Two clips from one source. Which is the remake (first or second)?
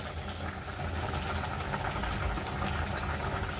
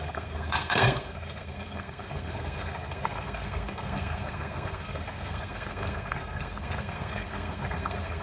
second